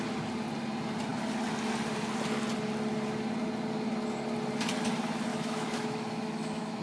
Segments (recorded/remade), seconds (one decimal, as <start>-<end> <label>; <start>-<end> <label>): 0.0-5.3 recorded; 5.3-6.8 remade